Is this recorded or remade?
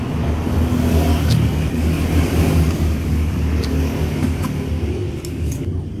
remade